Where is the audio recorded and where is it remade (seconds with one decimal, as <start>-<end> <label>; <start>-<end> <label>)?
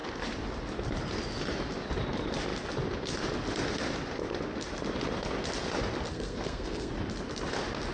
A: 0.0-6.1 recorded; 6.1-6.9 remade; 6.9-7.9 recorded